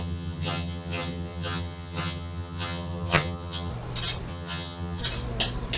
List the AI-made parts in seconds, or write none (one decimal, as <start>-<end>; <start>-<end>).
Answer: 0.0-3.7; 4.3-5.0